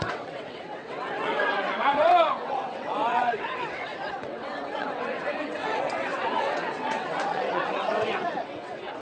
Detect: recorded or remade remade